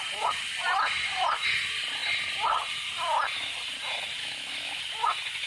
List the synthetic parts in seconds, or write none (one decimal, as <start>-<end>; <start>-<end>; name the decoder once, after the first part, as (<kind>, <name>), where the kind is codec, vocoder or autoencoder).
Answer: 4.2-4.8 (autoencoder, DAC-VAE)